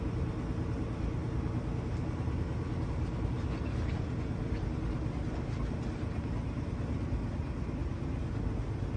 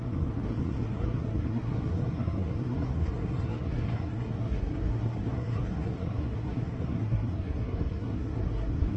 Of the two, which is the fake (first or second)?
second